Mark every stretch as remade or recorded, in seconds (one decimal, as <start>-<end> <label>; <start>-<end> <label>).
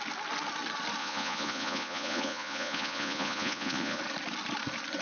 0.0-1.0 recorded; 1.0-4.0 remade; 4.0-5.0 recorded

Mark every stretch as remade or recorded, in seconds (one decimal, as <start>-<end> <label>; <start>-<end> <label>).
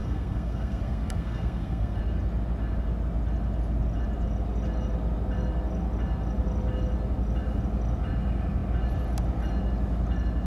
0.0-2.0 remade; 2.0-10.5 recorded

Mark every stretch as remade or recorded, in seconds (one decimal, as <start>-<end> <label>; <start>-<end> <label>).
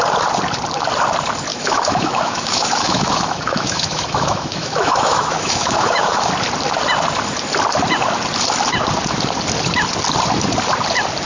0.0-1.5 recorded; 1.5-6.3 remade; 6.3-11.3 recorded